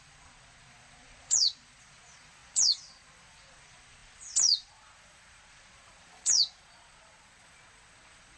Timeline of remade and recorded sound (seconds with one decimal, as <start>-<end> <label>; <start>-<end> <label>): 0.0-8.4 remade